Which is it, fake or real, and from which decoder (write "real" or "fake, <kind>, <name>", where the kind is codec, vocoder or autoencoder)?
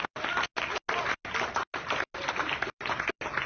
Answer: real